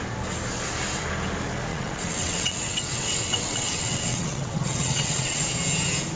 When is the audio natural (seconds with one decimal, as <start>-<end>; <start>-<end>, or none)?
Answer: 0.0-1.7; 5.4-6.2